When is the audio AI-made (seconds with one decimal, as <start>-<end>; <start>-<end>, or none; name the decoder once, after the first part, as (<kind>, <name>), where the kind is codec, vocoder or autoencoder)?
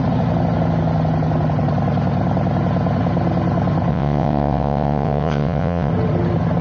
3.9-5.9 (vocoder, WaveNeXt)